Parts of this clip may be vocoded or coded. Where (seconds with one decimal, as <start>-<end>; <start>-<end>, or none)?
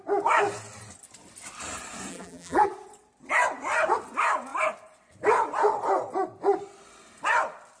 2.1-2.7